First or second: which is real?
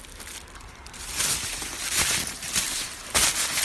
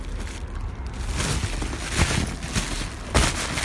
second